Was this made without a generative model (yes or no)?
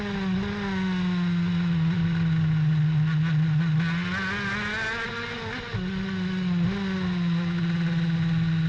yes